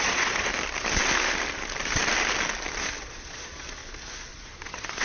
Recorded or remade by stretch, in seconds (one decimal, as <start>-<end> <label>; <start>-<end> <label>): 0.0-0.5 remade; 0.5-3.0 recorded; 3.0-3.8 remade; 3.8-4.3 recorded; 4.3-5.0 remade